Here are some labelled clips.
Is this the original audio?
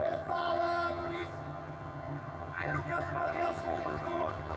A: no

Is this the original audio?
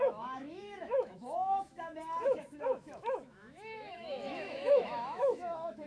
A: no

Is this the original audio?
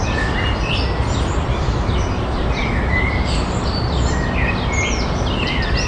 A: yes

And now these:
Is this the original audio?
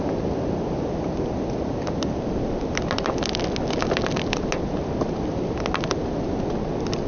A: yes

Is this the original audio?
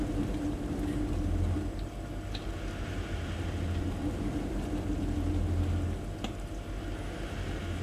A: yes